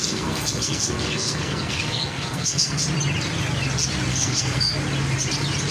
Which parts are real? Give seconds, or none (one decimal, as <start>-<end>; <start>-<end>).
2.8-4.1; 4.7-5.7